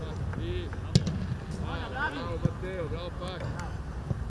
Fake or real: real